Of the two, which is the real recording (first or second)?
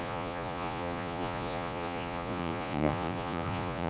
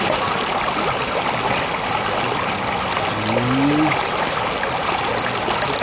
second